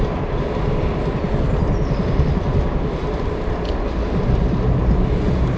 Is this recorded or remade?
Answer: recorded